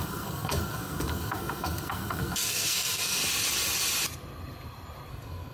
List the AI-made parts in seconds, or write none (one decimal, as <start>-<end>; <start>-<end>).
0.0-3.2; 5.1-5.5